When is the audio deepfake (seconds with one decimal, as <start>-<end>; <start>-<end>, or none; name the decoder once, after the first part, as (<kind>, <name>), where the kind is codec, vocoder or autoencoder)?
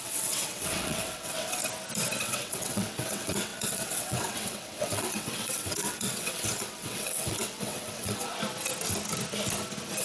0.0-1.6 (vocoder, WaveNeXt); 2.2-8.3